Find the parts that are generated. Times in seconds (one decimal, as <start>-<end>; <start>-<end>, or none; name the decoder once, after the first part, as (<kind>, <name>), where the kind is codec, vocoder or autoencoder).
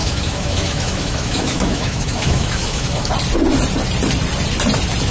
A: 0.0-3.1 (autoencoder, DAC-VAE)